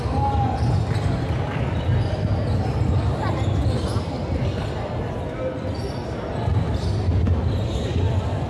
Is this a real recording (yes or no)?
yes